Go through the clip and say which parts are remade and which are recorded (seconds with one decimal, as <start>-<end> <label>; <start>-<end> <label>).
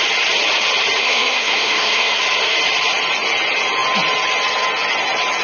0.0-1.0 recorded; 1.0-2.2 remade; 2.2-5.4 recorded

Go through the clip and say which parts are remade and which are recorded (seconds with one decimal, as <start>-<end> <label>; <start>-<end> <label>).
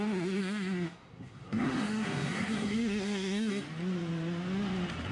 0.0-0.4 recorded; 0.4-3.5 remade; 3.5-5.1 recorded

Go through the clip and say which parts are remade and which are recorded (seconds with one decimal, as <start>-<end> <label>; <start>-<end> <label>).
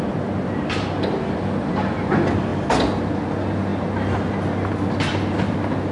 0.0-5.9 recorded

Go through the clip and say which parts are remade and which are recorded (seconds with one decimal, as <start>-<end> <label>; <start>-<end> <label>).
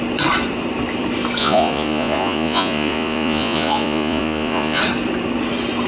0.0-1.4 recorded; 1.4-4.8 remade; 4.8-5.9 recorded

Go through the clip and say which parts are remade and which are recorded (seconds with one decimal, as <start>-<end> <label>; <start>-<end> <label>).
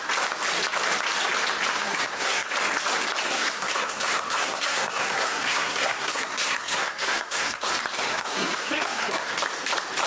0.0-1.7 recorded; 1.7-2.5 remade; 2.5-3.3 recorded; 3.3-7.7 remade; 7.7-8.1 recorded; 8.1-9.3 remade; 9.3-10.1 recorded